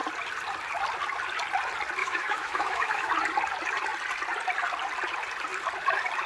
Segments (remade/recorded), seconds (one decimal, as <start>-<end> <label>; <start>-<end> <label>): 0.0-2.0 recorded; 2.0-3.1 remade; 3.1-6.3 recorded